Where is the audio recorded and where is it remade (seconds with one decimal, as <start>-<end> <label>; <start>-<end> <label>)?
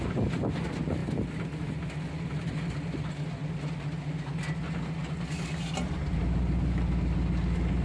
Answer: 0.0-7.8 recorded